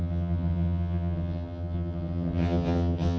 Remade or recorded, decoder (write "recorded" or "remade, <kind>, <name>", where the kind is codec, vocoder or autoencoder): remade, vocoder, HiFi-GAN